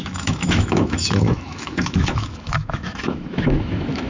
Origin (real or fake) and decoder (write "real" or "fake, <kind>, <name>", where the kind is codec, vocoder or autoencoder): fake, autoencoder, DAC-VAE